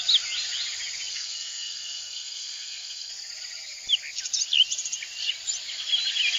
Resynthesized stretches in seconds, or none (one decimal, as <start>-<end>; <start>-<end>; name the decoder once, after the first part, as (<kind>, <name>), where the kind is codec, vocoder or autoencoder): 1.1-3.1 (codec, SNAC)